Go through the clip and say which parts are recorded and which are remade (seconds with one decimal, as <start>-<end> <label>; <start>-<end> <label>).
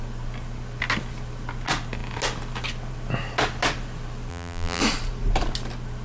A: 0.0-4.3 recorded; 4.3-4.8 remade; 4.8-6.0 recorded